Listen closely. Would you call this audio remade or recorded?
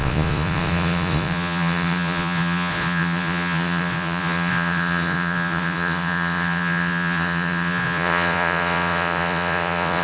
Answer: remade